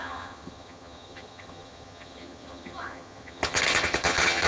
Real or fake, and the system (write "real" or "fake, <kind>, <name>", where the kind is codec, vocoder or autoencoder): fake, vocoder, HiFi-GAN